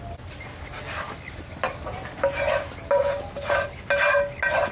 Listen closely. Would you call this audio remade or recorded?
recorded